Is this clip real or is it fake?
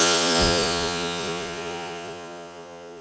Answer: fake